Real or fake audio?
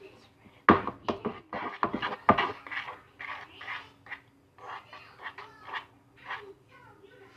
real